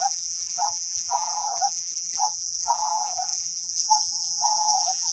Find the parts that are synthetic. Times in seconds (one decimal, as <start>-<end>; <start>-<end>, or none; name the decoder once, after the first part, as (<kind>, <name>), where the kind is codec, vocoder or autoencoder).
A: 0.0-5.1 (vocoder, BigVGAN v2)